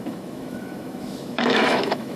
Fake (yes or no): yes